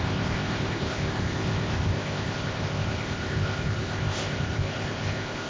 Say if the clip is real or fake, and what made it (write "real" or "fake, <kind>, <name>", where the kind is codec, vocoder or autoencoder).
fake, codec, ZipCodec